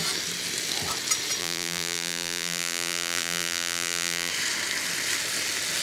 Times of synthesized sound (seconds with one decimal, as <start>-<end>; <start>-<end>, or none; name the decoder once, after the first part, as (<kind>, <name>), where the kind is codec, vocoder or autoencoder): 1.4-4.3 (vocoder, BigVGAN v2)